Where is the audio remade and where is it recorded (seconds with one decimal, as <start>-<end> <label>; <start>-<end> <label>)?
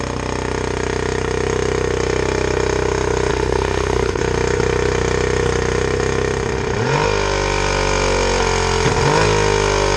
0.0-3.3 recorded; 3.3-4.2 remade; 4.2-10.0 recorded